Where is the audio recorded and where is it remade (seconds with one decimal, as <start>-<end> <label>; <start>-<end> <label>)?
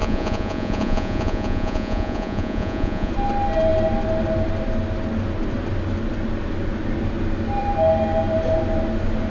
0.0-3.1 remade; 3.1-9.3 recorded